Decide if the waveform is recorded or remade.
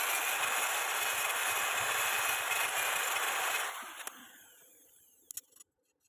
recorded